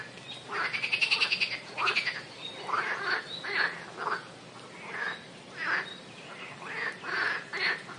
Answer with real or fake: real